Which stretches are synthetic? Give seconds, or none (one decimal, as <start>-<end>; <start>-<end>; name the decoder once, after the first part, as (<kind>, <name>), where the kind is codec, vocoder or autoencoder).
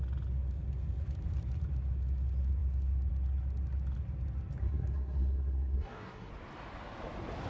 4.6-6.3 (codec, SNAC)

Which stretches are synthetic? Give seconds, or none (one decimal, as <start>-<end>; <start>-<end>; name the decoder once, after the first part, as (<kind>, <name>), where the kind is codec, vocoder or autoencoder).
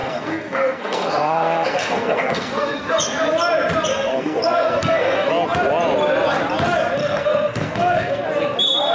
0.0-3.0 (codec, SNAC); 3.9-5.3; 7.0-8.2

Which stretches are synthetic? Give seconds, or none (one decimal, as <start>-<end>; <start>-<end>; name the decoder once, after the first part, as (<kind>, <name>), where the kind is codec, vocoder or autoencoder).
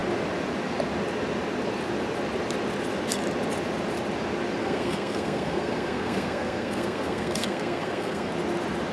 4.6-8.3 (codec, SNAC)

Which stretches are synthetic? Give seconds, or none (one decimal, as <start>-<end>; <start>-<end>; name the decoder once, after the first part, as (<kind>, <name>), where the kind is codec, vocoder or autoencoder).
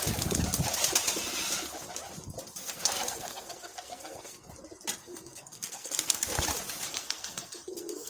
2.6-4.5 (codec, SNAC); 5.0-6.4; 6.9-8.1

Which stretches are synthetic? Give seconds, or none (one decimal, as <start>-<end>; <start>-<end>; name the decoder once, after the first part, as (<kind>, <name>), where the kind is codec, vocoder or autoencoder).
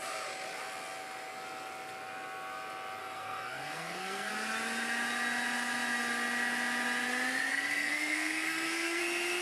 3.0-4.3 (codec, SNAC); 7.5-9.0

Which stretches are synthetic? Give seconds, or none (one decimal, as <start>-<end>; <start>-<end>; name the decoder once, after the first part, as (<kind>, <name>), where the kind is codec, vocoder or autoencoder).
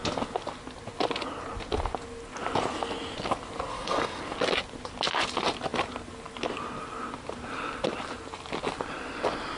3.7-4.2 (codec, SNAC)